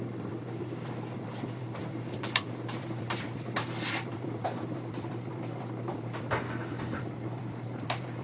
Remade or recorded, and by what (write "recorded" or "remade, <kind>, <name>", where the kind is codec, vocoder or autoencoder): remade, vocoder, BigVGAN v2